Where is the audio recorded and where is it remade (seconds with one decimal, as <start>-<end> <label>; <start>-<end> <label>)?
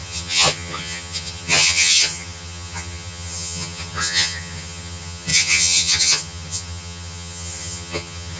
0.0-8.4 remade